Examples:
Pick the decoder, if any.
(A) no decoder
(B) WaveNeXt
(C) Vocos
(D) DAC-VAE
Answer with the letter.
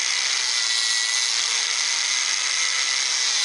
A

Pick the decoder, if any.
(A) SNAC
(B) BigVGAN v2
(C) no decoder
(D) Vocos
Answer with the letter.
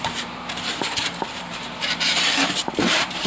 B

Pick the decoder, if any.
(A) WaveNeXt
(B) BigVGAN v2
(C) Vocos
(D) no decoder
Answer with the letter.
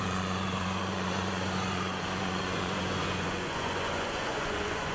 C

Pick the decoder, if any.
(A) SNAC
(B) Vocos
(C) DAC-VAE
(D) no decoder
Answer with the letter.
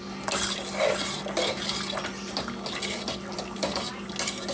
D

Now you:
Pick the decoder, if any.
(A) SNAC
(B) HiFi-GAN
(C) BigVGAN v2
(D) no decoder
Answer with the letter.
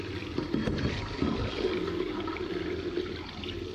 D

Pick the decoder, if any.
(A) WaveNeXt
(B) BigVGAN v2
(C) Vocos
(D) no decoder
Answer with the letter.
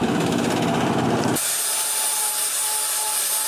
D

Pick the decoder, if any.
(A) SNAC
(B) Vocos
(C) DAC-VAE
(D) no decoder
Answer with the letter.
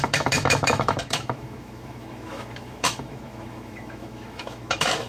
C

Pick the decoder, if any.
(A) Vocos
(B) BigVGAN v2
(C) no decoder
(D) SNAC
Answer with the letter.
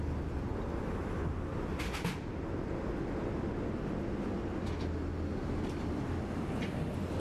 C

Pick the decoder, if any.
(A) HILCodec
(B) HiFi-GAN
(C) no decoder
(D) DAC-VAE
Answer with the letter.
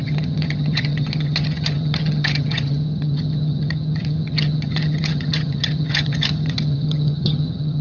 B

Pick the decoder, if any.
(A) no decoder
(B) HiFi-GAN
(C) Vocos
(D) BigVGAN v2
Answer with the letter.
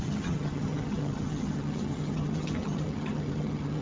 B